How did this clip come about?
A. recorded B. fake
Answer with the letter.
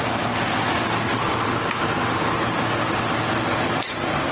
A